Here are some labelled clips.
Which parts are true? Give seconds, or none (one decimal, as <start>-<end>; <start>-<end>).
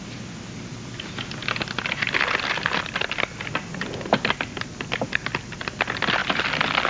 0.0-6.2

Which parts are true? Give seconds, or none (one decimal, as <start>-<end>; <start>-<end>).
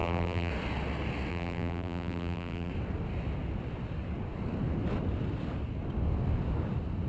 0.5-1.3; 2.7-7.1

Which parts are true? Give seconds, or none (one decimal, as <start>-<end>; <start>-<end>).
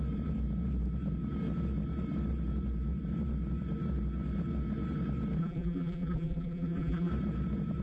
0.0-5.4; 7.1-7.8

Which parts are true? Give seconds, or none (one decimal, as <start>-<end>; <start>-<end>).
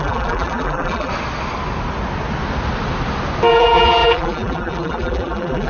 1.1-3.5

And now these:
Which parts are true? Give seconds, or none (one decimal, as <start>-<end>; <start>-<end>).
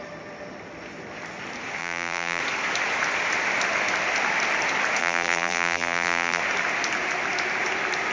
0.0-1.8; 2.4-5.0; 6.4-8.1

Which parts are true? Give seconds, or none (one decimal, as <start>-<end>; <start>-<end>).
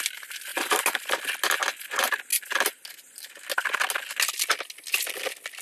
0.0-5.6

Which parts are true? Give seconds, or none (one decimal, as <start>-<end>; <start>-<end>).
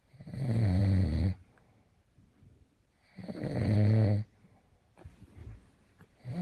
0.8-1.9; 3.2-4.5; 5.4-6.4